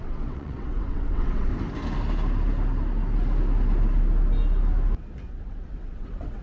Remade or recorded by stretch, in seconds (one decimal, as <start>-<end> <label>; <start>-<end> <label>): 0.0-1.5 remade; 1.5-5.3 recorded; 5.3-6.4 remade